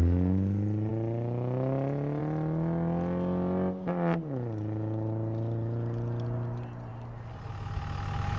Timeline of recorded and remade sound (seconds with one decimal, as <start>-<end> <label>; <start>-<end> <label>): 0.0-8.4 recorded